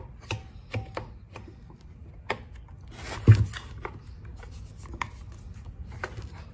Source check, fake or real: real